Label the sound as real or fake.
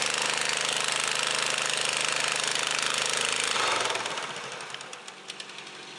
real